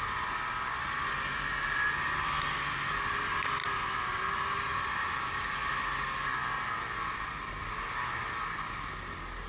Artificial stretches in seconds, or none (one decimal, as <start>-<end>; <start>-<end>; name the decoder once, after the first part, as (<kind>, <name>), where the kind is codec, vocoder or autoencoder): none